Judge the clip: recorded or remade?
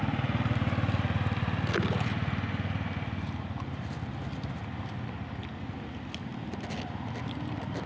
recorded